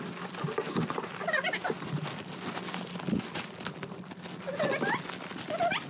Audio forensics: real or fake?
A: real